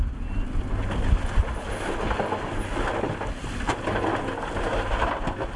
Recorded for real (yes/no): yes